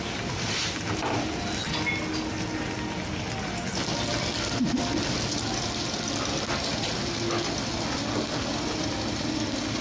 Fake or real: real